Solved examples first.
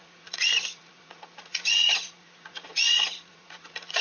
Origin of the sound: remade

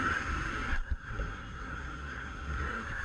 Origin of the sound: remade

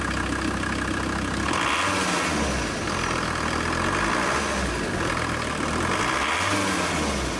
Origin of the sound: recorded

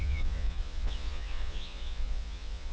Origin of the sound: remade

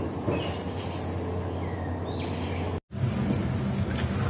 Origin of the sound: recorded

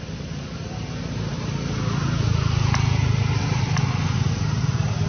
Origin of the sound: recorded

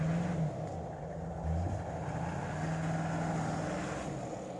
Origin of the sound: recorded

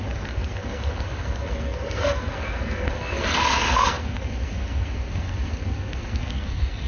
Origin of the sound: remade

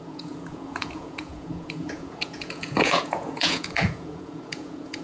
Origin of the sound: remade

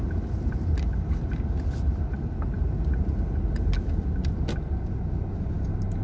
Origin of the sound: recorded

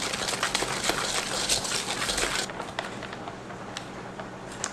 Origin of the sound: recorded